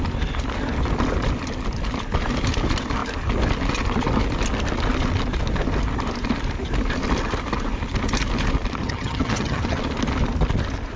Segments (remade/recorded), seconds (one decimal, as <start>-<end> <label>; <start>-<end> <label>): 0.0-8.8 recorded; 8.8-9.8 remade; 9.8-11.0 recorded